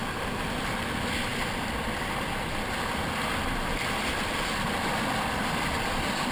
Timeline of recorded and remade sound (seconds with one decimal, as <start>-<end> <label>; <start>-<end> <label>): 0.0-6.3 recorded